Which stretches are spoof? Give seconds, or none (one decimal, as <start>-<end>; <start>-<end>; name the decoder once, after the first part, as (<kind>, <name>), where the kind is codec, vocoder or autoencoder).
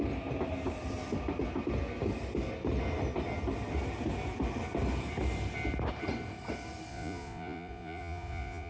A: 6.9-8.7 (vocoder, Vocos)